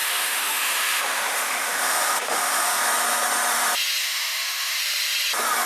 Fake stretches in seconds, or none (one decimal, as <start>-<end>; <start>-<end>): 0.0-2.8; 4.0-4.8